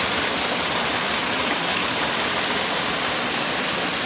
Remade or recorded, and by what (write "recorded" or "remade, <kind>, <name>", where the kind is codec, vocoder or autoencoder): recorded